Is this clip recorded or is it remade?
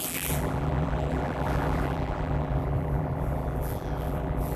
remade